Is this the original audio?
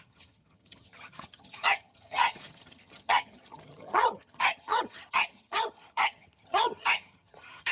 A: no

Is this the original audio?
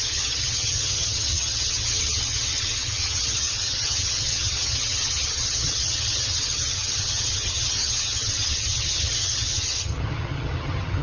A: no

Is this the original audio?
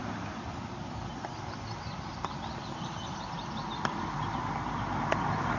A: yes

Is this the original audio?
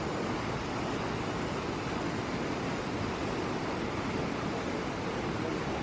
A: yes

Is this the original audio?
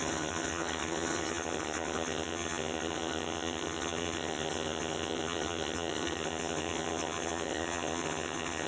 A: no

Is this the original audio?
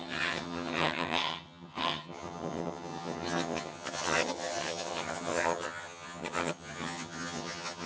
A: no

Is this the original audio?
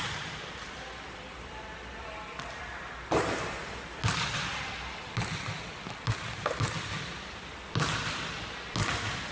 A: yes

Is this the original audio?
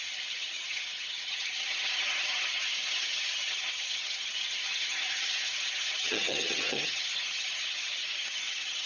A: no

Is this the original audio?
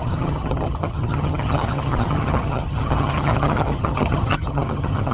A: no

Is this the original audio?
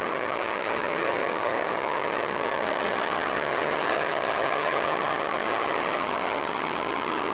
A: no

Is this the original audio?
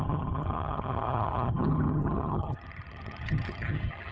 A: no